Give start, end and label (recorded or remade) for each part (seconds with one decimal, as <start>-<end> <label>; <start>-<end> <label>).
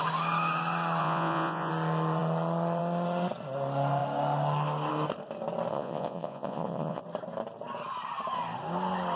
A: 0.0-1.0 recorded; 1.0-1.7 remade; 1.7-5.7 recorded; 5.7-7.0 remade; 7.0-9.2 recorded